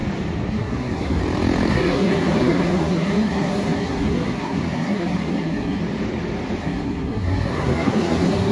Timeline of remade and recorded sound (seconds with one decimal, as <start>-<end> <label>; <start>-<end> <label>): 0.0-0.5 recorded; 0.5-1.2 remade; 1.2-1.7 recorded; 1.7-5.8 remade; 5.8-6.6 recorded; 6.6-8.5 remade